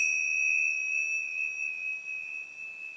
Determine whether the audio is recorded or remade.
recorded